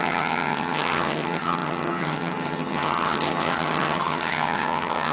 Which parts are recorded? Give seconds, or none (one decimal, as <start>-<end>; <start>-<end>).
none